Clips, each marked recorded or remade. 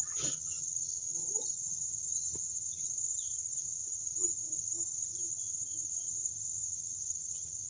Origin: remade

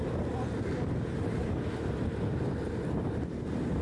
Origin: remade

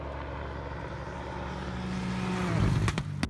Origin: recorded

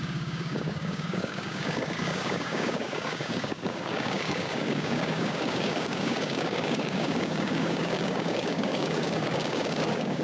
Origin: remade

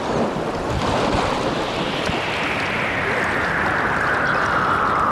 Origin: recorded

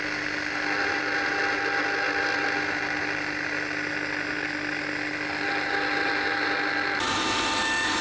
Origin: recorded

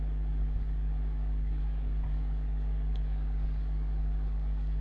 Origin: remade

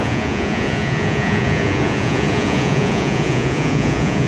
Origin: remade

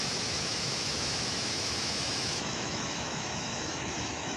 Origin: remade